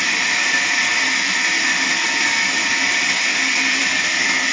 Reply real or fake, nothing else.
real